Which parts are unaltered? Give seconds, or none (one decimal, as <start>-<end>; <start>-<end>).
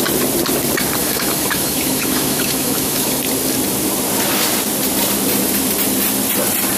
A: 0.0-1.0; 3.2-6.8